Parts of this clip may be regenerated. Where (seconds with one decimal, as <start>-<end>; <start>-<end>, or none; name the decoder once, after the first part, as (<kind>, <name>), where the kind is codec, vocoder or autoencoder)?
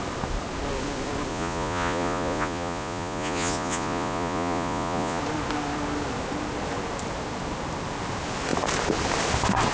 1.3-5.2 (vocoder, Vocos)